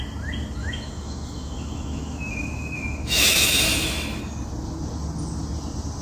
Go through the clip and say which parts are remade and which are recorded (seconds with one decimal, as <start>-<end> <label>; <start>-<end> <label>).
0.0-0.6 recorded; 0.6-4.2 remade; 4.2-6.0 recorded